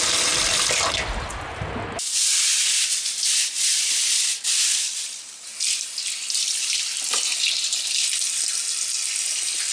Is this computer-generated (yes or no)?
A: no